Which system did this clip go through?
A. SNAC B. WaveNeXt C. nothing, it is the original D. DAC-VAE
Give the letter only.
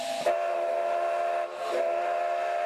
C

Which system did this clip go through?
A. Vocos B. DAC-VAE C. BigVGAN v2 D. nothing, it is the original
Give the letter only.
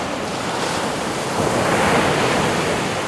D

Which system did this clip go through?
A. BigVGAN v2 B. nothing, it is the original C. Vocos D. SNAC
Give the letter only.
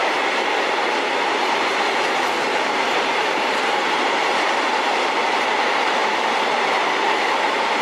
A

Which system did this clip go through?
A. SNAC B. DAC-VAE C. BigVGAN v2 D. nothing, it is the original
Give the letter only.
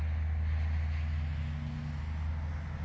D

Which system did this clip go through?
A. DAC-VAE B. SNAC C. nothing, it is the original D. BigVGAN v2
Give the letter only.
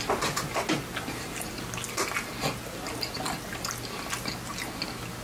C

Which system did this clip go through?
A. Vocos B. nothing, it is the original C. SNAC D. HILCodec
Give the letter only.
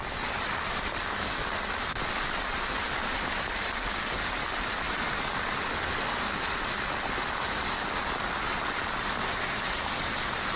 B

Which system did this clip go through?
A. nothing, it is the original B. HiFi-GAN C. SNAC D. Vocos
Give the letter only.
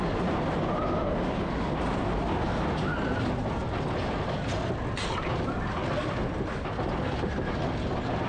A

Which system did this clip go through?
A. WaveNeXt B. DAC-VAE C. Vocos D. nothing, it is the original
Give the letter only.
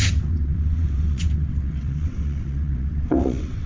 A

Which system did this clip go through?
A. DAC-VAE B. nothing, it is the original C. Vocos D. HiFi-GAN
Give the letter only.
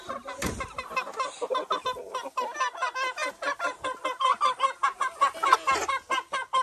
B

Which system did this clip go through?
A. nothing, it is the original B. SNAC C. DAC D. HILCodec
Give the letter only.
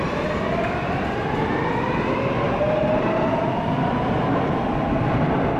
A